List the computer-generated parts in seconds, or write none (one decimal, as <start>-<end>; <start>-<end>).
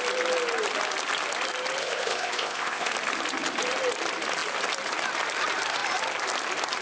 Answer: 1.8-2.9